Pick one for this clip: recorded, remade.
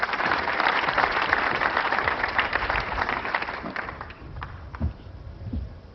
remade